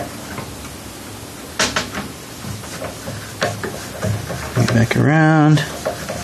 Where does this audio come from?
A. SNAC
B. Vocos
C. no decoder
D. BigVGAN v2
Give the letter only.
C